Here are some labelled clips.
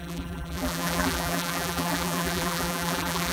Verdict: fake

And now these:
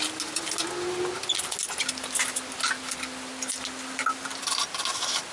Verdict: real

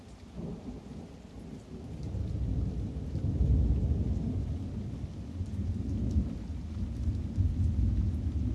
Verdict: real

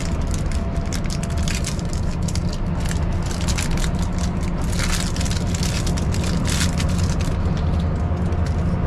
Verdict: real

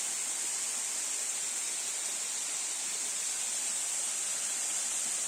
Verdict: real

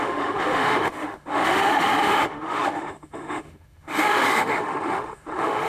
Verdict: fake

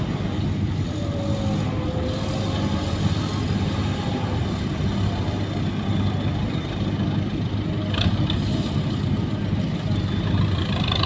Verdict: real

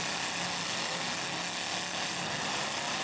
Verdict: real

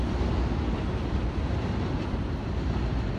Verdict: real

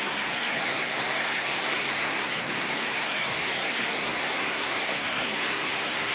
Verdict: fake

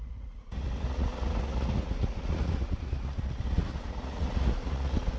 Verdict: fake